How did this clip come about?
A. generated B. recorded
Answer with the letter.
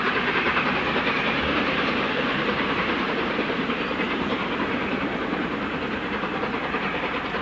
A